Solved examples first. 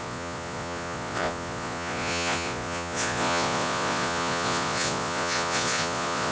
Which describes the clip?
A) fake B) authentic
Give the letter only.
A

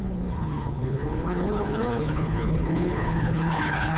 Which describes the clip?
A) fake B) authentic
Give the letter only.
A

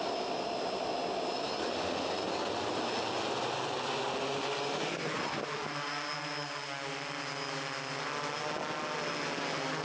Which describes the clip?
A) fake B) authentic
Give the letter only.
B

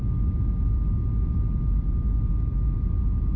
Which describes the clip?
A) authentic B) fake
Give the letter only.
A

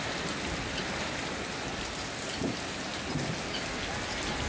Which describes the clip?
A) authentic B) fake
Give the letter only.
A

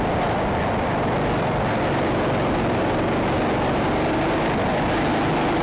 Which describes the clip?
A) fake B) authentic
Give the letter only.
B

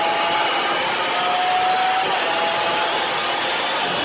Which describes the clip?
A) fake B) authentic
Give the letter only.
B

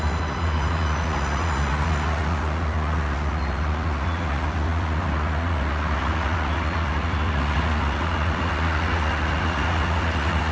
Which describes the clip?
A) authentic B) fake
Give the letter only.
B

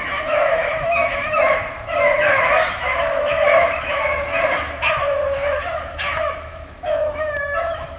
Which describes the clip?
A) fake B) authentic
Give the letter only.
A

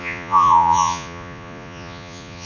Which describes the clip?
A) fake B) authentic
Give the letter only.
A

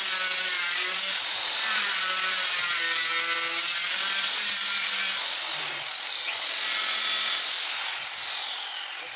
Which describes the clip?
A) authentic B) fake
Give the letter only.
A